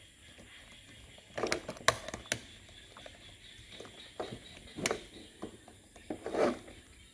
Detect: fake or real real